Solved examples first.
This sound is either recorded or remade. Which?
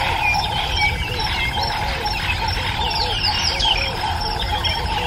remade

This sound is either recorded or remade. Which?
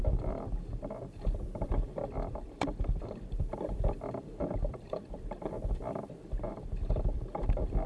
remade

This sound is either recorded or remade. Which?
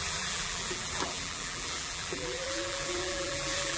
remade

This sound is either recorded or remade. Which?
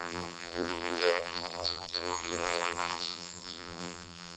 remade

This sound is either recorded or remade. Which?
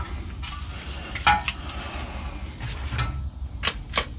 recorded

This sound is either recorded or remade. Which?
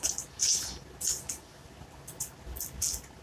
recorded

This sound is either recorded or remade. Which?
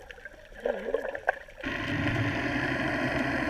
remade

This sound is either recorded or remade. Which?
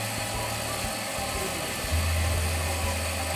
recorded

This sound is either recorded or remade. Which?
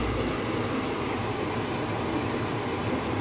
recorded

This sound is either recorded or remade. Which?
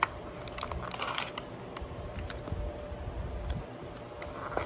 recorded